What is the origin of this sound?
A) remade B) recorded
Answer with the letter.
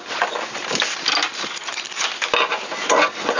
B